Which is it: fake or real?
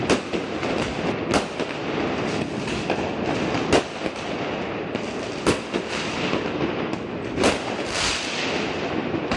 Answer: real